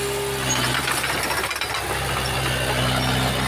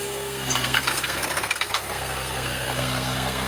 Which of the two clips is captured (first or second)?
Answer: first